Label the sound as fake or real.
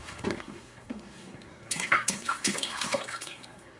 fake